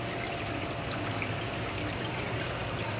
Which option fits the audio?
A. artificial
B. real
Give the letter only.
B